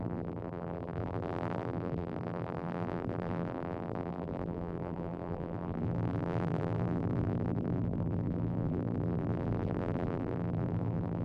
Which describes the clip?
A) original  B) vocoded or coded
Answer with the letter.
B